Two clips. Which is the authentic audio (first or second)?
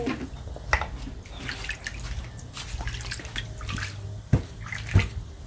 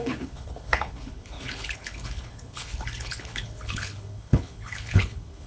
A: first